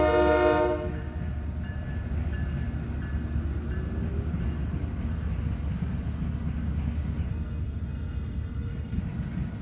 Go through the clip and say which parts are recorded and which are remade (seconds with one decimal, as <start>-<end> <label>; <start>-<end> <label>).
0.0-7.3 recorded; 7.3-9.0 remade; 9.0-9.6 recorded